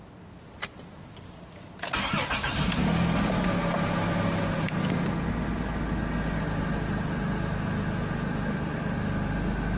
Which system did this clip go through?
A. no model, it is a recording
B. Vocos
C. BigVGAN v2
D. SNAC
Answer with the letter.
A